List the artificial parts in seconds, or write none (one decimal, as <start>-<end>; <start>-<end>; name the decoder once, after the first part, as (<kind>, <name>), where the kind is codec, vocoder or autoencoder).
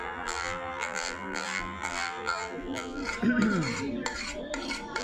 0.0-3.0 (vocoder, BigVGAN v2)